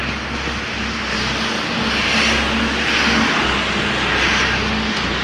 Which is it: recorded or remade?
recorded